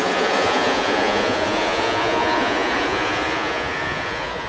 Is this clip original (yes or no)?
no